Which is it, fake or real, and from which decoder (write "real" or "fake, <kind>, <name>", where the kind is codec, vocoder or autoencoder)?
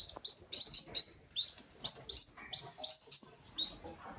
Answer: real